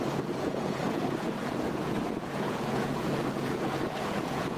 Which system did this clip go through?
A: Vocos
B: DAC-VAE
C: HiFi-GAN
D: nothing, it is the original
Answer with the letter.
A